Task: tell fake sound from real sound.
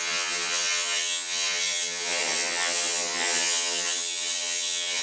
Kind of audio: fake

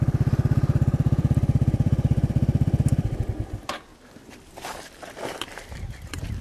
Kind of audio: fake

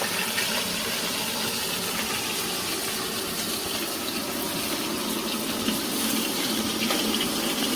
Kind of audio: real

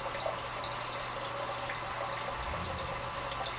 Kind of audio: real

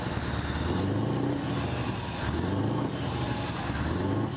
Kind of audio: real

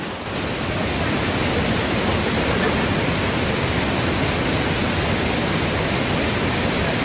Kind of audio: real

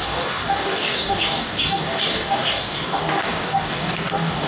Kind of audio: fake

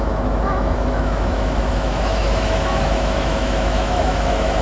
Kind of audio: fake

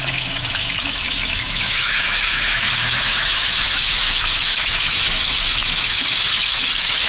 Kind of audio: fake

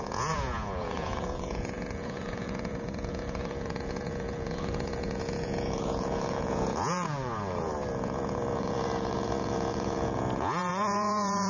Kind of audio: fake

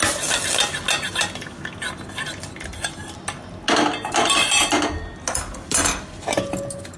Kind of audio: real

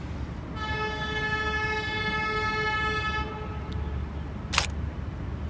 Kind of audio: real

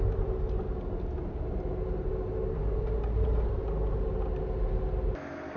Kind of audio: real